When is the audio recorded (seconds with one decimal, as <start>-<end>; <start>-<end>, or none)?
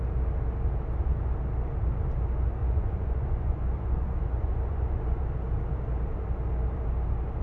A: 0.0-2.6; 5.2-7.4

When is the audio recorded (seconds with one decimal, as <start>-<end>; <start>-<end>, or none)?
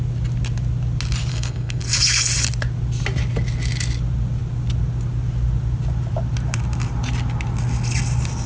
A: 0.0-1.3; 1.8-8.5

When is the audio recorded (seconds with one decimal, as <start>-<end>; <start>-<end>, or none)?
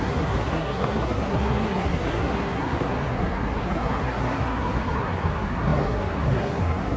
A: none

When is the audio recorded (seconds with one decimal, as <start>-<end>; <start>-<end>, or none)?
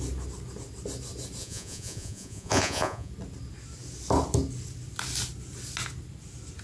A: 0.0-1.4; 3.1-6.6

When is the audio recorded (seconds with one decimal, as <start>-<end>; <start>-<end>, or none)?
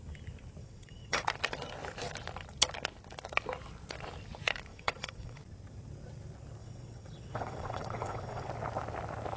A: 0.0-0.6; 1.2-4.7; 5.4-6.6; 8.5-9.4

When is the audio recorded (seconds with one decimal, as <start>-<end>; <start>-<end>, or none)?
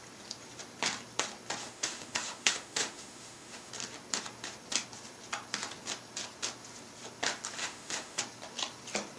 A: 0.0-1.6; 3.7-7.6; 8.2-9.2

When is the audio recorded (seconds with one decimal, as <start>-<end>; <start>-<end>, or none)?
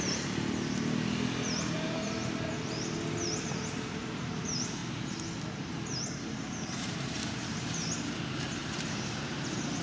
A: 0.0-4.8; 8.1-8.6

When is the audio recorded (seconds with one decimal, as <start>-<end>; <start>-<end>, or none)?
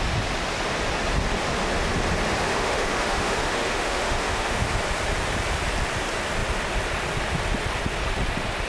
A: 0.0-2.5; 4.7-8.7